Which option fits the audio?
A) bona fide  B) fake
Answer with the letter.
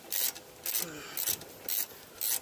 A